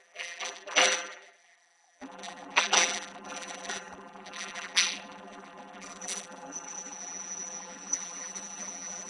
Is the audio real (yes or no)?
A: no